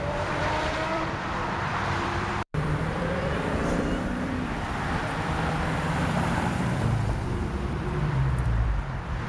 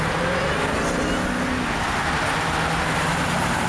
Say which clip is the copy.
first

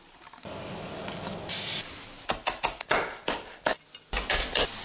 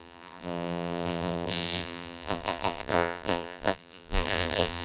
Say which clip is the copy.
second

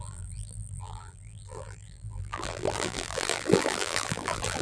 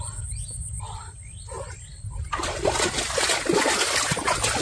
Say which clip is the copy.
first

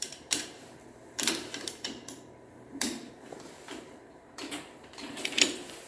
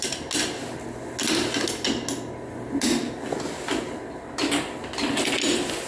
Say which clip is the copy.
first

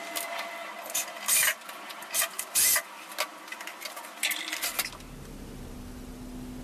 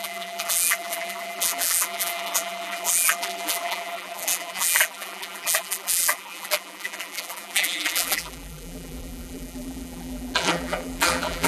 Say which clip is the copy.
second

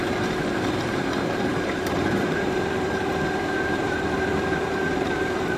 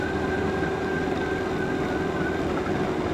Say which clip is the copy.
first